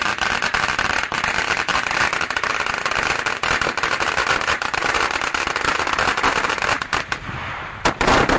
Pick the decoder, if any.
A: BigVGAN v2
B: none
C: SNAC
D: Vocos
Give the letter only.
A